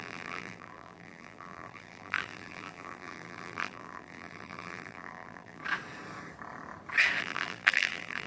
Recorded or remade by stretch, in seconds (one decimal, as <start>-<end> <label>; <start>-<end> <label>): 0.0-5.6 remade; 5.6-7.2 recorded; 7.2-8.3 remade